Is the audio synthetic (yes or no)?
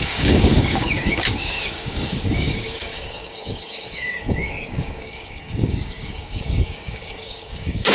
yes